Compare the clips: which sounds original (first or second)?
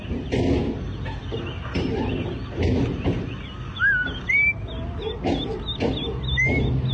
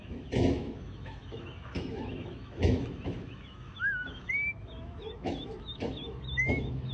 first